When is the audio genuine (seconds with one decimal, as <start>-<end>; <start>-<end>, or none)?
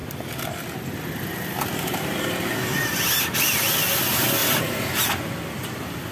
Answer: 0.0-4.4; 5.0-6.1